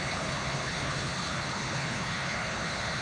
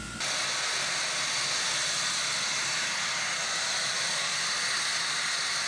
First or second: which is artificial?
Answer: first